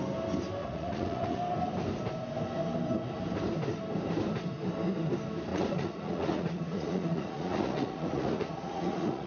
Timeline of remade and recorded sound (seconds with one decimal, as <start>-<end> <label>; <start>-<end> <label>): 0.0-0.6 recorded; 0.6-1.4 remade; 1.4-5.5 recorded; 5.5-9.3 remade